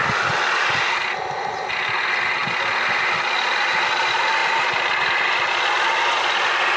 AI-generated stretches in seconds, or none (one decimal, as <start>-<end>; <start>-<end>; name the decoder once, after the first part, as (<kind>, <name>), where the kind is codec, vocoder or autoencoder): none